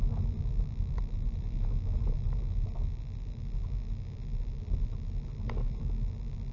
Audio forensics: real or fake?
real